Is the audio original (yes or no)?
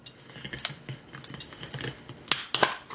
yes